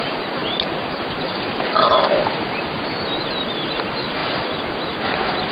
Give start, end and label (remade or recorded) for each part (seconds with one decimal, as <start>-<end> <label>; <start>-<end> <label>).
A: 0.0-5.5 recorded